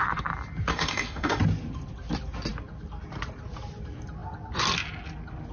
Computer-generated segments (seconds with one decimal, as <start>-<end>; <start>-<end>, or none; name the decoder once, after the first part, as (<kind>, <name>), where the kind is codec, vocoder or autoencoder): 0.7-1.4 (autoencoder, DAC-VAE)